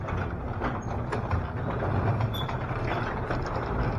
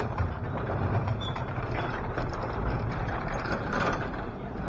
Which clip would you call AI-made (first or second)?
second